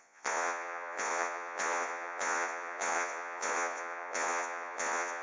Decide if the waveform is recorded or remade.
remade